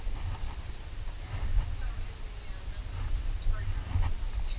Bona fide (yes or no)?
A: yes